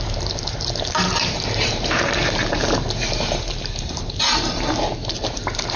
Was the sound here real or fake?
fake